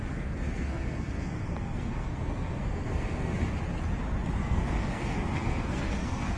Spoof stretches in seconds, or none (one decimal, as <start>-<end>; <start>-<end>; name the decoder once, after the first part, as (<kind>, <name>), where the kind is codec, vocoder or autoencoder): 0.0-3.5 (codec, SNAC); 4.4-6.4

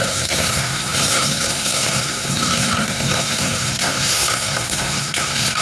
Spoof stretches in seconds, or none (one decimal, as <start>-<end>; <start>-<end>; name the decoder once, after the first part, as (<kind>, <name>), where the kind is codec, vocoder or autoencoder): 0.0-5.6 (codec, SNAC)

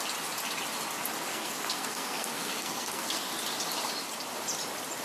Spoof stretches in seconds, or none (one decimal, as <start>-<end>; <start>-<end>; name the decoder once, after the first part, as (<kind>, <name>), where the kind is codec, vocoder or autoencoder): 1.3-3.3 (codec, SNAC)

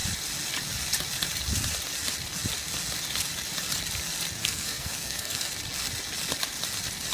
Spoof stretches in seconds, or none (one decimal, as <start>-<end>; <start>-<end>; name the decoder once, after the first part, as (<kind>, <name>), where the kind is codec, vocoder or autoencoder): 4.4-5.5 (codec, SNAC)

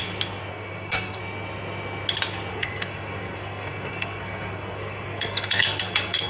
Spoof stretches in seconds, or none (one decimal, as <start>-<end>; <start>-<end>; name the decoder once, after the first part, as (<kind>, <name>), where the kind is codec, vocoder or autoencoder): 0.5-1.2 (codec, SNAC); 2.5-6.3